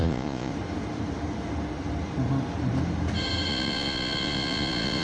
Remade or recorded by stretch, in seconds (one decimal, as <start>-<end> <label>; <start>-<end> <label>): 0.0-0.5 remade; 0.5-3.5 recorded; 3.5-5.0 remade